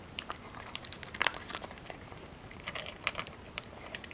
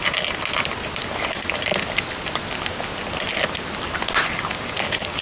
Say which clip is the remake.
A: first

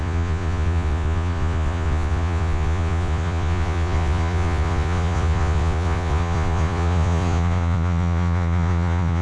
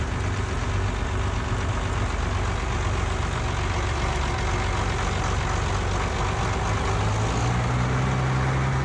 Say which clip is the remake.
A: first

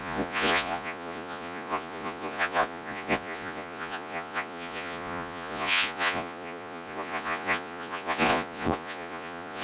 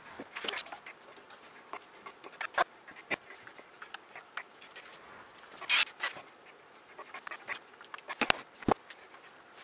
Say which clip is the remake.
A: first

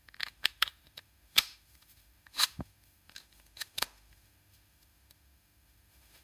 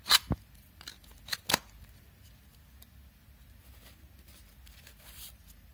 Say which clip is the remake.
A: first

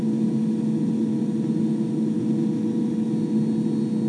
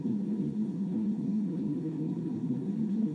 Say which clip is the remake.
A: second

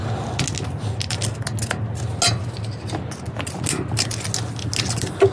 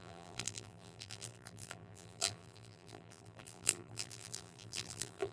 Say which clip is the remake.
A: second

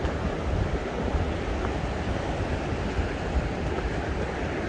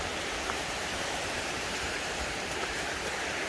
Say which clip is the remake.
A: second